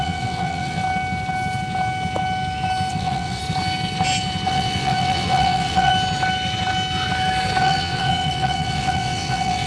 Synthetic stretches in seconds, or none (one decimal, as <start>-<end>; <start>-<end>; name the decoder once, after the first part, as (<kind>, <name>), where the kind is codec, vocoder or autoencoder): 0.0-0.8 (vocoder, WaveNeXt); 2.9-3.4; 4.5-5.9; 7.6-9.7